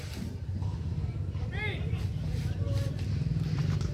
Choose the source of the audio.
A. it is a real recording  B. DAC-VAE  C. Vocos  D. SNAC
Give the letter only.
A